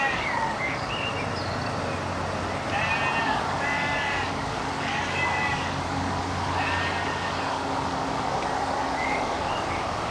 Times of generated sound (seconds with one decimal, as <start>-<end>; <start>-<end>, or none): 0.0-1.1; 3.2-10.1